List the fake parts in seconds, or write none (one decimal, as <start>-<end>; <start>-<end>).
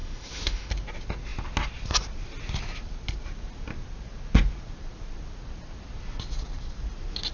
0.0-0.7